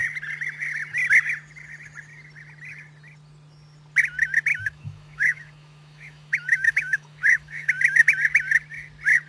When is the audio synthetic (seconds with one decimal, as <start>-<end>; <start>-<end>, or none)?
4.5-7.7